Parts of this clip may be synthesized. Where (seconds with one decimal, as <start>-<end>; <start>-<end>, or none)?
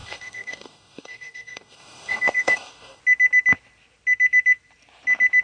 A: 0.0-3.0